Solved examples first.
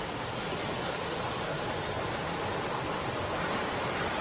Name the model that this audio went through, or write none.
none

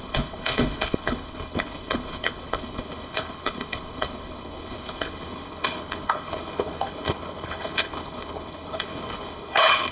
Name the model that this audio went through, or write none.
codec, HILCodec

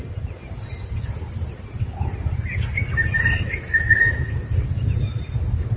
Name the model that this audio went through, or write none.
none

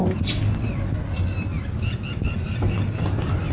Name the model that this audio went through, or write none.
none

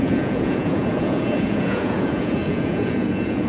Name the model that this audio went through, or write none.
vocoder, Vocos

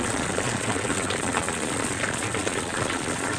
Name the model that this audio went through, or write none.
vocoder, Vocos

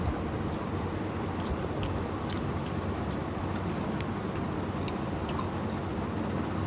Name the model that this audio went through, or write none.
none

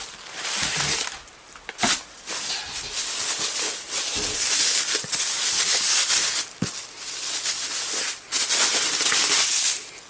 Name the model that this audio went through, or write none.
none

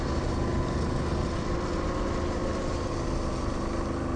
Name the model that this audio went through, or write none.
none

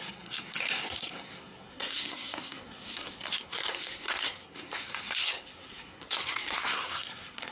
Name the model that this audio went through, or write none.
codec, SNAC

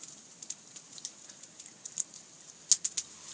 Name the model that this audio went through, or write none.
none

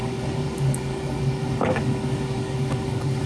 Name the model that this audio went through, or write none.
codec, DAC